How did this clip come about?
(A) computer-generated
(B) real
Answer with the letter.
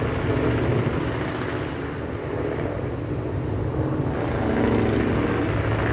B